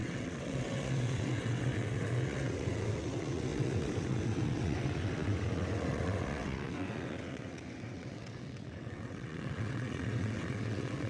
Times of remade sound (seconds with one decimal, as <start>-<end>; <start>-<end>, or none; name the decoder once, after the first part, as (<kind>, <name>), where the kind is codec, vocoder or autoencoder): 0.0-11.1 (vocoder, WaveNeXt)